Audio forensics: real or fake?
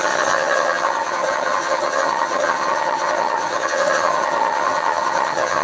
fake